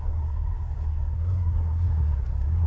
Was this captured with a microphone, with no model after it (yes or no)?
no